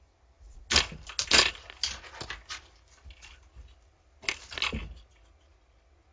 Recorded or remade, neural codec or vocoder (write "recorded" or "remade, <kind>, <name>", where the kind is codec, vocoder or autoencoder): recorded